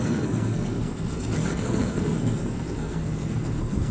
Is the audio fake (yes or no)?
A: yes